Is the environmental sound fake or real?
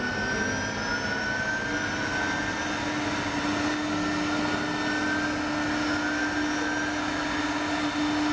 real